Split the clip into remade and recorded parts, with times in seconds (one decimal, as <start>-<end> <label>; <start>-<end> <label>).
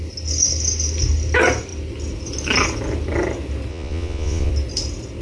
0.0-3.7 recorded; 3.7-4.5 remade; 4.5-5.2 recorded